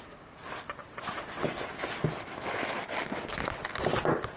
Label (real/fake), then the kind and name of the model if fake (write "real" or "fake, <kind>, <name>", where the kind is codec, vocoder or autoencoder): real